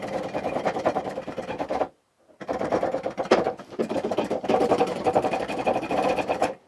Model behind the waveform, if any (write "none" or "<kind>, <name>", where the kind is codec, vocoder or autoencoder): vocoder, BigVGAN v2